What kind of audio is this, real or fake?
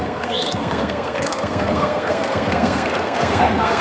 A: fake